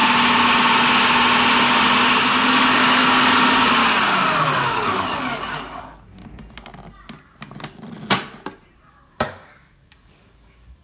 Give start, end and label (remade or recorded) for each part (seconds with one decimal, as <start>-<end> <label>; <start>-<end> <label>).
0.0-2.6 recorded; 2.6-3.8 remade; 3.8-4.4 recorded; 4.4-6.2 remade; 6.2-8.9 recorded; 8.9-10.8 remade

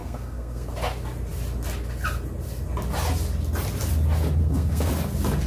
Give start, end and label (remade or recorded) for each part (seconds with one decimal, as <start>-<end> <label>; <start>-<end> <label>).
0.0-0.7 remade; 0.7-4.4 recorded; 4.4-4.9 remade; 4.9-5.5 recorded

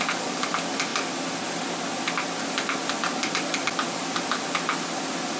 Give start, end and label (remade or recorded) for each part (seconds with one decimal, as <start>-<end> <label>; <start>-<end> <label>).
0.0-5.4 recorded

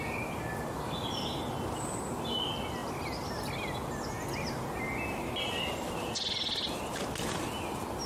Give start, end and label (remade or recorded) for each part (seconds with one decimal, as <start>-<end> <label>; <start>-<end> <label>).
0.0-8.1 recorded

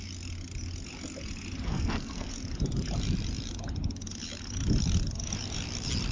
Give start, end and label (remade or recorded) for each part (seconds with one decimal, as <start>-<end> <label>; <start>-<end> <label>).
0.0-1.7 recorded; 1.7-2.3 remade; 2.3-6.1 recorded